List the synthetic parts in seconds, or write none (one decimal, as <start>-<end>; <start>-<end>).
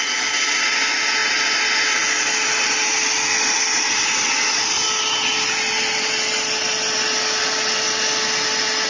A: none